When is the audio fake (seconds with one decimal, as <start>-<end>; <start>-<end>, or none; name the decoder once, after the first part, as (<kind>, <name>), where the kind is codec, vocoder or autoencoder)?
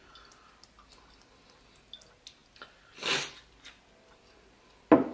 none